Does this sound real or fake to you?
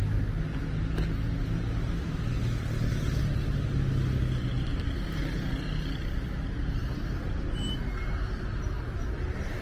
real